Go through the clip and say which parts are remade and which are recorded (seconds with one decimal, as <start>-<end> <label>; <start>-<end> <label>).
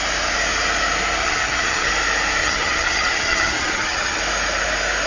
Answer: 0.0-1.2 recorded; 1.2-1.9 remade; 1.9-2.4 recorded; 2.4-4.2 remade; 4.2-5.1 recorded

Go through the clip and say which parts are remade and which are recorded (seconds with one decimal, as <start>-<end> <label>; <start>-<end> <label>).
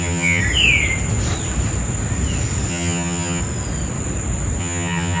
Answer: 0.0-0.4 remade; 0.4-2.7 recorded; 2.7-3.4 remade; 3.4-4.6 recorded; 4.6-5.2 remade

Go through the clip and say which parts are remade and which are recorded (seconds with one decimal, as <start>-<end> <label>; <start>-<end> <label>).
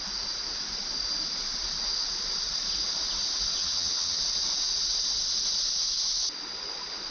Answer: 0.0-3.6 recorded; 3.6-4.2 remade; 4.2-7.1 recorded